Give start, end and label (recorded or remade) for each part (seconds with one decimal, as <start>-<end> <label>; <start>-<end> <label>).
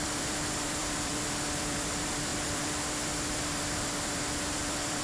0.0-1.1 remade; 1.1-1.6 recorded; 1.6-5.0 remade